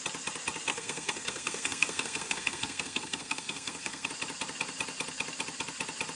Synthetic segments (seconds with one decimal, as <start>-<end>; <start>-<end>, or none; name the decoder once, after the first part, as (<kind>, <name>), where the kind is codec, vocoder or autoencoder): 0.7-4.1 (codec, SNAC)